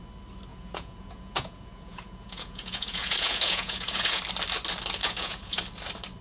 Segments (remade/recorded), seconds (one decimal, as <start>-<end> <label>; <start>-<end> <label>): 0.0-0.5 recorded; 0.5-4.2 remade; 4.2-5.0 recorded; 5.0-5.6 remade; 5.6-6.2 recorded